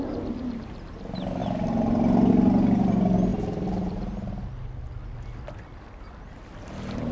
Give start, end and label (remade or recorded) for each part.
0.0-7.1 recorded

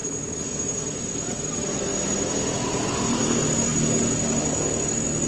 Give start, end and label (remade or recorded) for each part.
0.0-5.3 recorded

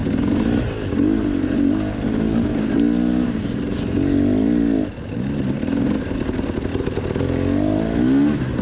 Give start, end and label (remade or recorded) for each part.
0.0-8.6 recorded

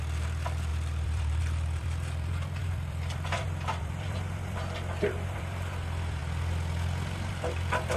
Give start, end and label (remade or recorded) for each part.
0.0-6.2 remade; 6.2-7.3 recorded; 7.3-8.0 remade

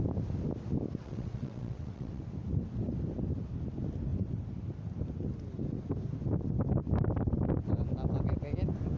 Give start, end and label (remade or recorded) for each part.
0.0-1.0 recorded; 1.0-2.2 remade; 2.2-9.0 recorded